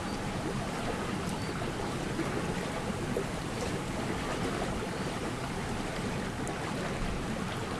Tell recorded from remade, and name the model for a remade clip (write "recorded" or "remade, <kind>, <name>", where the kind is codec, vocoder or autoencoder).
recorded